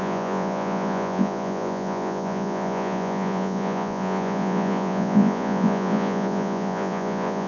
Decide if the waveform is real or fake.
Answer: fake